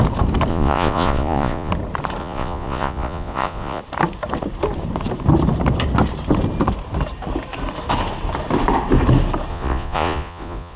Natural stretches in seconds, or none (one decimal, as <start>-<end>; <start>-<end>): 0.0-0.5; 1.7-2.2; 3.8-9.5